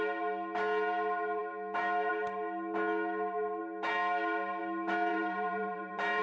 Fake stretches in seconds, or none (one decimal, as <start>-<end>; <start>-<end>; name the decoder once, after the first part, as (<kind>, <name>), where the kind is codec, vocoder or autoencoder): 5.1-6.2 (vocoder, BigVGAN v2)